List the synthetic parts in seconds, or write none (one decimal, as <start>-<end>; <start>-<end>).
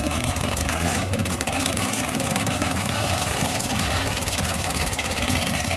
0.0-5.8